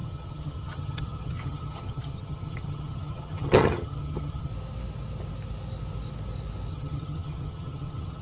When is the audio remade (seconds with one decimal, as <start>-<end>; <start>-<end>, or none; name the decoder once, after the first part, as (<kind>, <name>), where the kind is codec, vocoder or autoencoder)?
0.0-4.5 (vocoder, HiFi-GAN); 6.7-8.2